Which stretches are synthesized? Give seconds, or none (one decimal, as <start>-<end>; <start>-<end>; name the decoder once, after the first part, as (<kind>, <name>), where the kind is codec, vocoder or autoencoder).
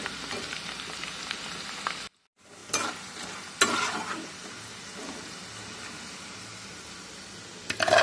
none